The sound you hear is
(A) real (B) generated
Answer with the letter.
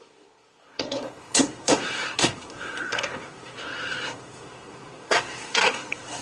B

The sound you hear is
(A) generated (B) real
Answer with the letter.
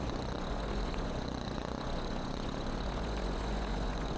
A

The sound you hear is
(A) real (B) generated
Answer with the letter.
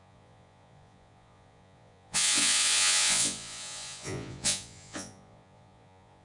B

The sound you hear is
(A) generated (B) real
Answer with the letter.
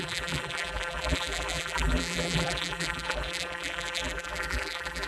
A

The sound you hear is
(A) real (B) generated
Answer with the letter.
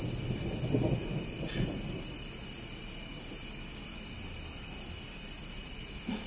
A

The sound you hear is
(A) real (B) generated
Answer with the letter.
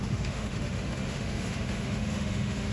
B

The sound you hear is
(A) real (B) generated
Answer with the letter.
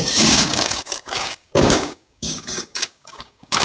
B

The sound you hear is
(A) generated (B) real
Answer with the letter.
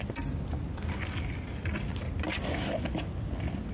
B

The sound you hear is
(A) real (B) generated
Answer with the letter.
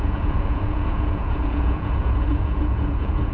B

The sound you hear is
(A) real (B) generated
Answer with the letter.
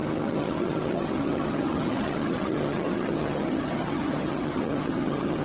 B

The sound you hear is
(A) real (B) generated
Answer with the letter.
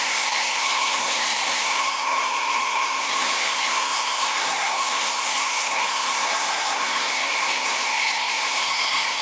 B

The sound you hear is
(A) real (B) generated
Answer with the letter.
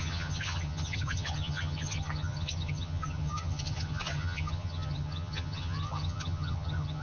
B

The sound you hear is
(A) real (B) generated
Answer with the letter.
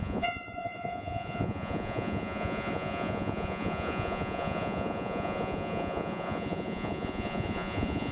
B